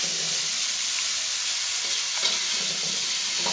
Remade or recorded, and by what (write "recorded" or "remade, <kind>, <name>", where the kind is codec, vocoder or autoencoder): recorded